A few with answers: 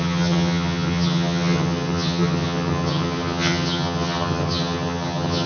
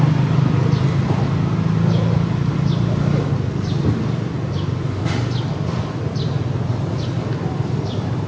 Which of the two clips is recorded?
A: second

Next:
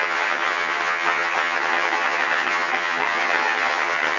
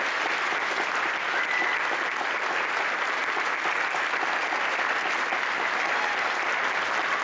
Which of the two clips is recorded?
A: second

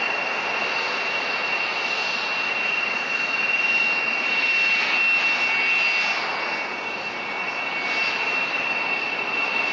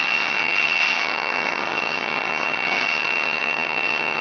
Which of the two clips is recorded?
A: first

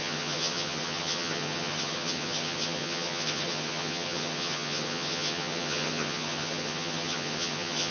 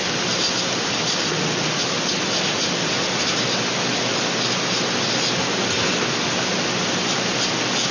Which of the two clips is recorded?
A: second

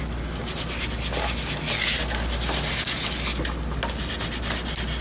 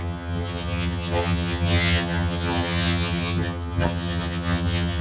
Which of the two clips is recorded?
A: first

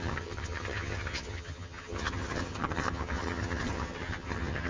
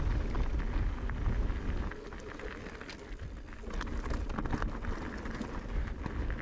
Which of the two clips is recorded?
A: second